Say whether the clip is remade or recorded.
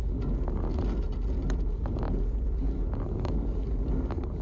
recorded